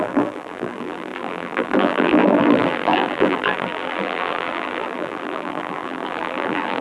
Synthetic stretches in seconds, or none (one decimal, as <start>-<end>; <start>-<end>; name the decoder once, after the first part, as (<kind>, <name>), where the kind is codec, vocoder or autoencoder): 0.0-6.8 (vocoder, BigVGAN v2)